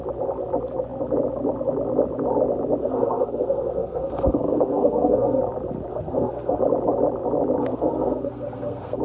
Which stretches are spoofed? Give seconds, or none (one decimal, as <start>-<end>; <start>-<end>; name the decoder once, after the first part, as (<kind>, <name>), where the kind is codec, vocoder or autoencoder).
2.8-5.4 (codec, SNAC); 5.9-6.6; 7.6-9.0